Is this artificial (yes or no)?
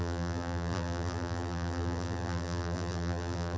yes